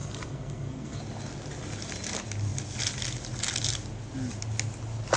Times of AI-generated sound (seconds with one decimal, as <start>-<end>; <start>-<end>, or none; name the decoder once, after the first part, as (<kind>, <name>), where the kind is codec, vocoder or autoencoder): 0.0-1.0 (codec, SNAC)